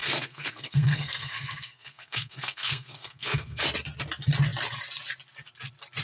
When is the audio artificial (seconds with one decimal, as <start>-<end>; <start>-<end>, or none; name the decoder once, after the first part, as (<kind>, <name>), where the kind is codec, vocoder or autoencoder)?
0.0-3.6 (codec, SNAC)